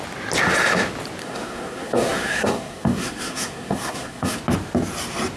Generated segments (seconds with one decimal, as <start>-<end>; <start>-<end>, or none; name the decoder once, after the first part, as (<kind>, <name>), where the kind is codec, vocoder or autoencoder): 1.2-4.4 (codec, SNAC)